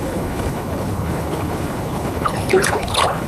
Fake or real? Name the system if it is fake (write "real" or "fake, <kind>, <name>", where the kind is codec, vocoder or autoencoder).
fake, codec, HILCodec